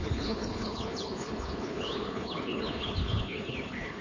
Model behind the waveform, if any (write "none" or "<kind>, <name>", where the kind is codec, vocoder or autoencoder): codec, HILCodec